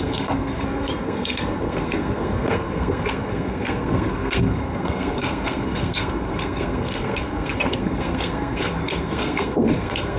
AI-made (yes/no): yes